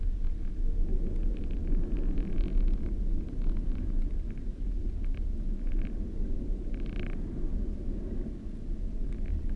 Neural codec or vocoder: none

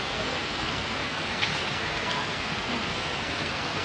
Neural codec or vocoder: codec, SNAC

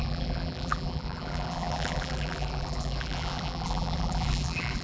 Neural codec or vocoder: vocoder, BigVGAN v2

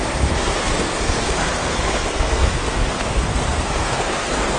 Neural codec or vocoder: codec, SNAC